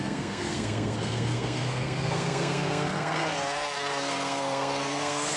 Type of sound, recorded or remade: remade